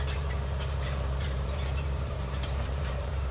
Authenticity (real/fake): fake